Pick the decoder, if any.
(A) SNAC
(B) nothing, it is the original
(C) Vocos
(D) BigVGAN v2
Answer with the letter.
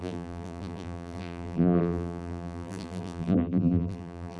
D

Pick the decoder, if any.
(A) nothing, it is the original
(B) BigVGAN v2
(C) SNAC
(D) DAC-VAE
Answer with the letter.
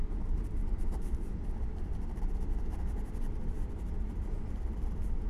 B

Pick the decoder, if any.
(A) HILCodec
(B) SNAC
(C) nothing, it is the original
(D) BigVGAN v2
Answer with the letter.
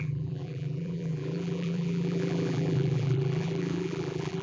D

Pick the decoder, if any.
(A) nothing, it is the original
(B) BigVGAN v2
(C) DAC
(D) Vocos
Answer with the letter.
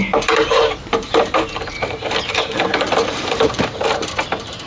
B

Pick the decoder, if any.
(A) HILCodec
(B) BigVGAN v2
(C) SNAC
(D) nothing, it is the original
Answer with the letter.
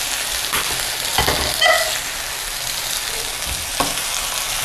D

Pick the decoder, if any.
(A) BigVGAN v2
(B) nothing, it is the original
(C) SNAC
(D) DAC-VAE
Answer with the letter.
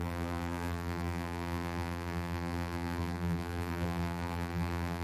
A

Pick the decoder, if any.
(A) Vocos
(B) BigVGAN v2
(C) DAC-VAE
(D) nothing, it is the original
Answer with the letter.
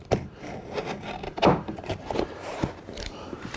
B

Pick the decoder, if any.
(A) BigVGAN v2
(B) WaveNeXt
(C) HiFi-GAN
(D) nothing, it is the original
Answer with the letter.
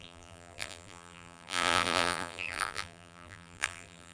A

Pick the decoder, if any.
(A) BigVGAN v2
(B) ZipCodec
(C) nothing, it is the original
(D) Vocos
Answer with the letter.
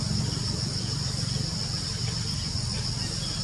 C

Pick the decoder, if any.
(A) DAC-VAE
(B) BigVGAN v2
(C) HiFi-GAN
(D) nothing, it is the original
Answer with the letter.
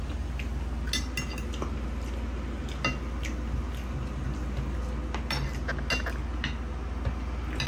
D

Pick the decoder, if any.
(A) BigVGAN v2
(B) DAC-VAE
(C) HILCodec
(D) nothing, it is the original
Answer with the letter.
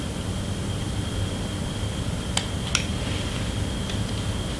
D